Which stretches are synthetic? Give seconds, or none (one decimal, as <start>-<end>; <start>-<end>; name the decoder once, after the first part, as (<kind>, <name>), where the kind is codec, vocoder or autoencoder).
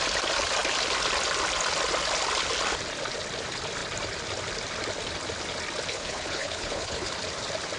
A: 5.9-7.1 (codec, HILCodec)